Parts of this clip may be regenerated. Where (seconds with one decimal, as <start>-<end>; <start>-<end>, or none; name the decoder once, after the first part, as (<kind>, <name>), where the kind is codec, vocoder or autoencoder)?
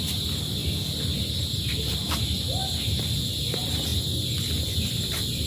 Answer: 3.9-5.5 (vocoder, BigVGAN v2)